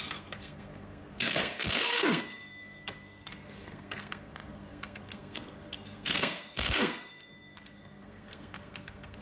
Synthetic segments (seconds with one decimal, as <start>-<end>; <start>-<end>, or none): 0.0-9.2